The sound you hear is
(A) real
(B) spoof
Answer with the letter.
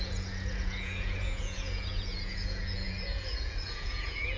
B